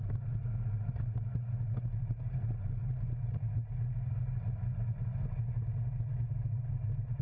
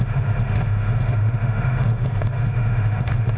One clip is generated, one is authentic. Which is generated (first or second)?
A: second